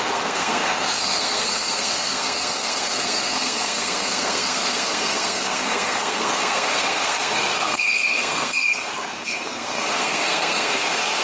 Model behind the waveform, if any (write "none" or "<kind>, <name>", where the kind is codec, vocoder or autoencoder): codec, SNAC